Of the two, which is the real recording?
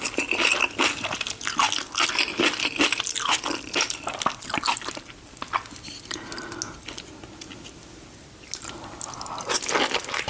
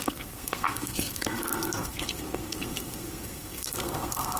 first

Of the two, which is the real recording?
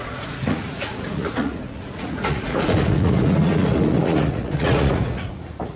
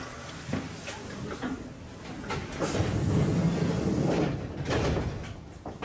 second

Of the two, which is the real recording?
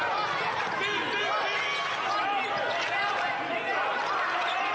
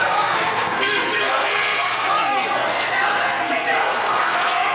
first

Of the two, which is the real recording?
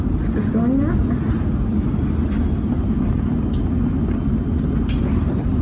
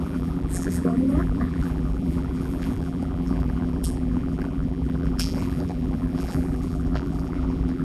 first